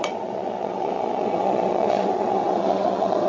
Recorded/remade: remade